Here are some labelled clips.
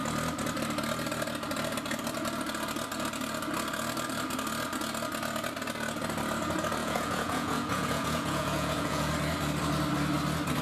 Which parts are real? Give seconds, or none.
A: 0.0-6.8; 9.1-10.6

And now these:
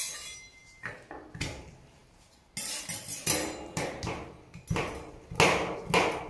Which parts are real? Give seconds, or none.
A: 0.0-6.3

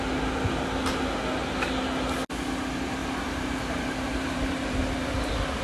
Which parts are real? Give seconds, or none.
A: 0.0-3.0; 4.8-5.6

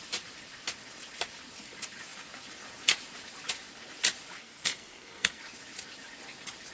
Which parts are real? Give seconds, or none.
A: 0.0-4.4; 5.4-6.7